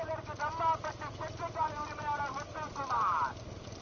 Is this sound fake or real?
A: fake